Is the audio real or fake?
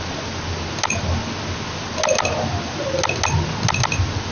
real